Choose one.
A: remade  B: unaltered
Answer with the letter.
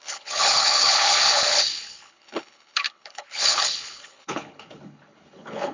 A